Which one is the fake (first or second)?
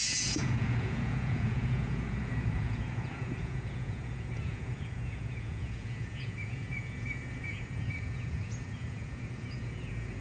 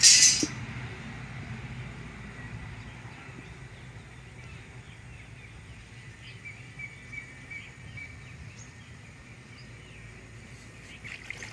first